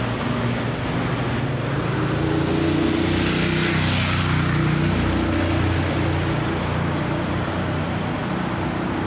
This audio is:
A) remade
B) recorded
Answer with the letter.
B